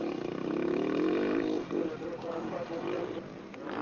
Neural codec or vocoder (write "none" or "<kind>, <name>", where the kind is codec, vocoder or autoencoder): none